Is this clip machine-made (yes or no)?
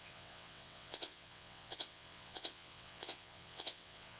yes